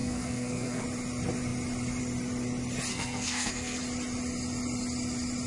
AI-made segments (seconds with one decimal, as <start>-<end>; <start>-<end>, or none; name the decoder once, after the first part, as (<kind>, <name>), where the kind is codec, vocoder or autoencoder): 0.0-0.8 (codec, SNAC); 2.9-3.8